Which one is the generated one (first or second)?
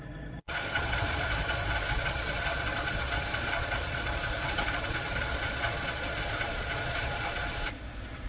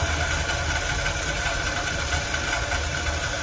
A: first